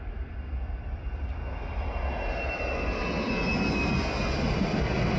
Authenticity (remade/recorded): recorded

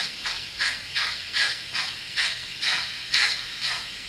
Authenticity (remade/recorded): remade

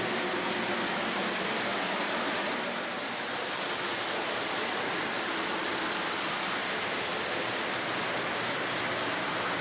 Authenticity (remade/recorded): recorded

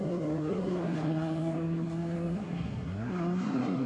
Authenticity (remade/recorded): remade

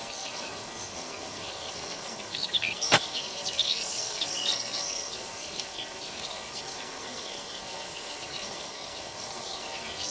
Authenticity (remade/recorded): remade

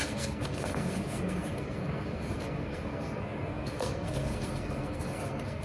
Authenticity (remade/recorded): remade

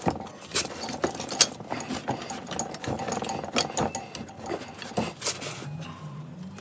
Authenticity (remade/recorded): recorded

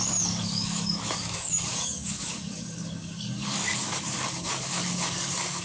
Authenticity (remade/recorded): remade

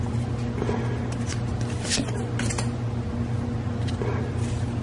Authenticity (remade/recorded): recorded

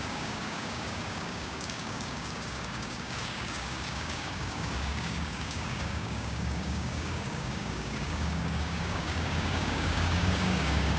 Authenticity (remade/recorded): remade